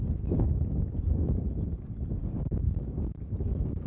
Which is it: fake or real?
real